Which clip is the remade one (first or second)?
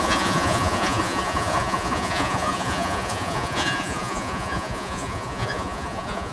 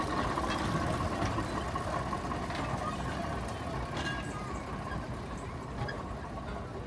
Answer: first